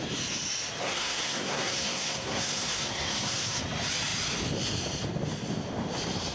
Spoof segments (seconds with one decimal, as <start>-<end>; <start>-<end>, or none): 0.8-3.6